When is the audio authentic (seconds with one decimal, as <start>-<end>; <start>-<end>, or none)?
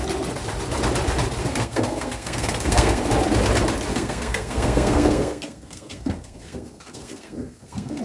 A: 0.0-1.4; 3.0-3.9